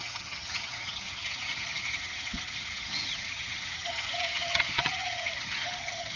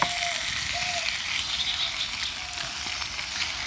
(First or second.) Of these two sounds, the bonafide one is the second